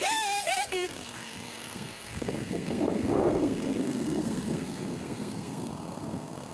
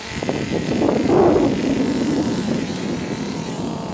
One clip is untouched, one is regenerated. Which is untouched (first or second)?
second